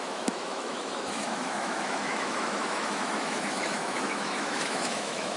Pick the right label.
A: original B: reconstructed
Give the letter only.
B